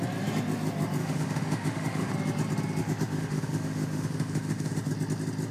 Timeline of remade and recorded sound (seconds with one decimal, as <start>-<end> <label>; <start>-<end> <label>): 0.0-1.0 recorded; 1.0-2.1 remade; 2.1-2.8 recorded; 2.8-4.9 remade; 4.9-5.5 recorded